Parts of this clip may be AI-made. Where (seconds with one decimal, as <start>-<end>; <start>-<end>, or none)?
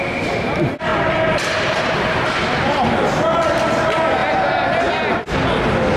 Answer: 0.9-2.9; 4.2-4.9